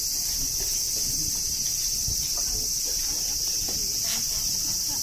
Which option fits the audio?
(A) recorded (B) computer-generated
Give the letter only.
A